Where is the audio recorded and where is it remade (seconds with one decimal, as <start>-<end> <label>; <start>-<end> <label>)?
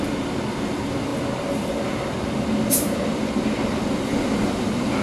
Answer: 0.0-5.0 recorded